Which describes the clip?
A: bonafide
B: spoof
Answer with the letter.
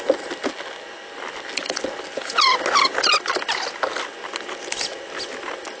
A